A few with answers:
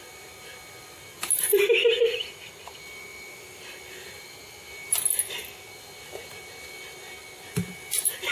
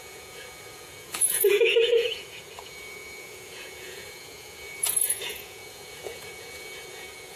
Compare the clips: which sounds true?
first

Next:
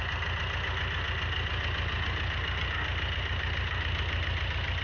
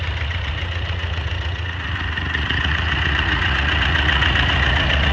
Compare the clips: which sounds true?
first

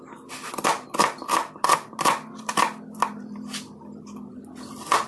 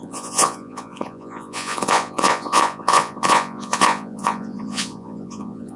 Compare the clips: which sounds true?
first